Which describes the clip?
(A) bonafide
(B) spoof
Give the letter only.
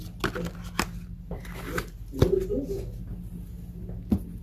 A